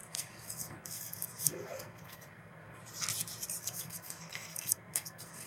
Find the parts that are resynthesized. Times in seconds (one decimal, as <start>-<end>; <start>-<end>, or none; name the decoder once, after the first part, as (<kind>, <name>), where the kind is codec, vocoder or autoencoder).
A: 0.0-2.8 (codec, SNAC); 3.6-5.5